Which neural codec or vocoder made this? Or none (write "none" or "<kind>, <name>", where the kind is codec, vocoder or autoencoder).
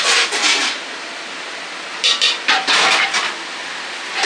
none